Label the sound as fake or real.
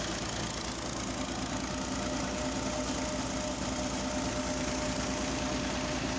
real